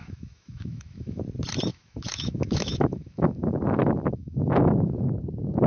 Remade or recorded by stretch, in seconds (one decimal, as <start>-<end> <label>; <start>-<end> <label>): 0.0-1.2 remade; 1.2-1.7 recorded; 1.7-5.1 remade; 5.1-5.7 recorded